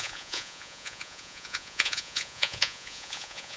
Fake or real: fake